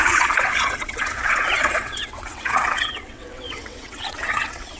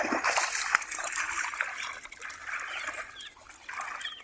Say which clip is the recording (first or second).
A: second